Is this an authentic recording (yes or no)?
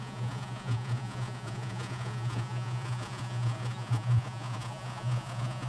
no